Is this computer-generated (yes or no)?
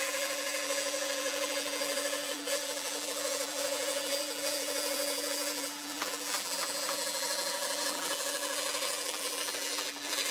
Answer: yes